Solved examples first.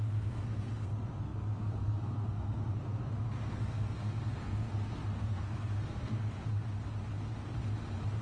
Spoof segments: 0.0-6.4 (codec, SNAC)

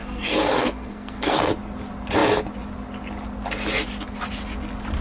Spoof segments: 0.0-1.5 (codec, SNAC)

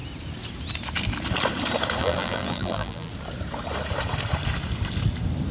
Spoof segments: 2.0-3.1 (vocoder, BigVGAN v2)

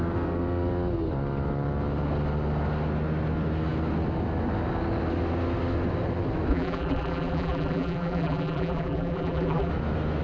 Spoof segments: 6.5-9.7 (vocoder, BigVGAN v2)

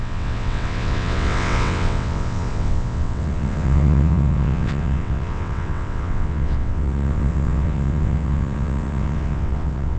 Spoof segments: 0.0-10.0 (vocoder, WaveNeXt)

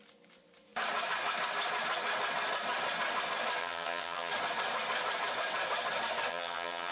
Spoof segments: 3.6-4.3 (vocoder, HiFi-GAN); 6.3-6.9

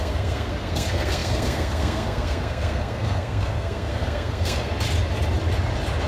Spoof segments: 0.0-4.7 (codec, SNAC)

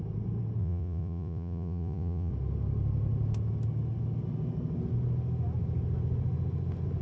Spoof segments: 0.6-2.3 (vocoder, Vocos)